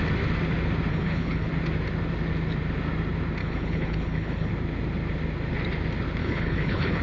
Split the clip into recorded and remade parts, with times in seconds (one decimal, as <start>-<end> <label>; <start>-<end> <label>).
0.0-0.9 recorded; 0.9-1.5 remade; 1.5-3.4 recorded; 3.4-4.5 remade; 4.5-6.2 recorded; 6.2-7.0 remade